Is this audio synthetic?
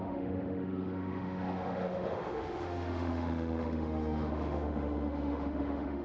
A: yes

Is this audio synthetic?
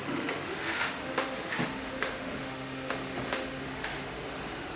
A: yes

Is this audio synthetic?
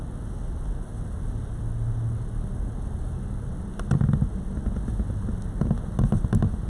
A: no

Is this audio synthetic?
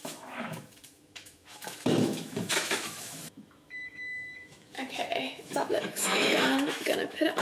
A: yes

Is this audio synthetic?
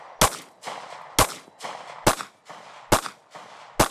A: no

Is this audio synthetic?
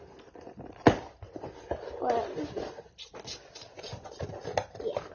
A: no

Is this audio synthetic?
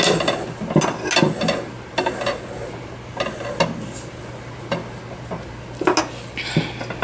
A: no